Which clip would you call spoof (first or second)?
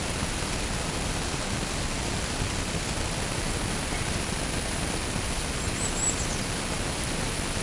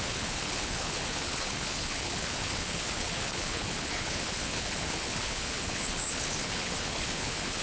second